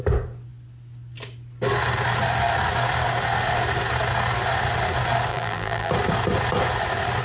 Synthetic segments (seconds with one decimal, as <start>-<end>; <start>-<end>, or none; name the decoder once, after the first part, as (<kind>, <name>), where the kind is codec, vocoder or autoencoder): 5.3-5.9 (vocoder, BigVGAN v2)